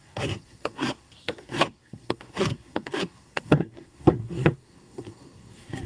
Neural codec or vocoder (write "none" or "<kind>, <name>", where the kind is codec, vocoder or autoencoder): codec, SNAC